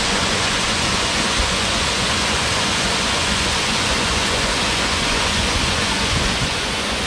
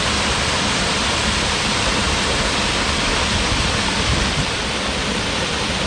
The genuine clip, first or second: second